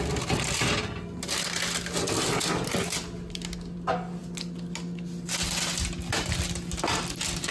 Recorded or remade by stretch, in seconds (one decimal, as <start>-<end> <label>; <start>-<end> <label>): 0.0-7.5 recorded